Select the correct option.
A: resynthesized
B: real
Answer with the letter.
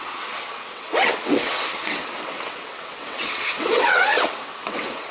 A